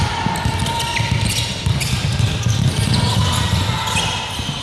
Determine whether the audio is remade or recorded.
recorded